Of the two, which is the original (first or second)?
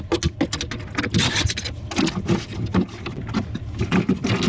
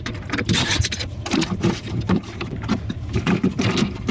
first